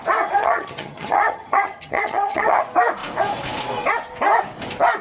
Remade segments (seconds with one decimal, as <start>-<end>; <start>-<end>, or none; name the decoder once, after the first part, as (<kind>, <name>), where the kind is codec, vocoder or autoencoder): 0.4-2.6 (vocoder, HiFi-GAN)